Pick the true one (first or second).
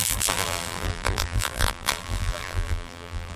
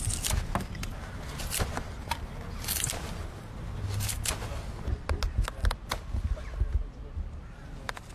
second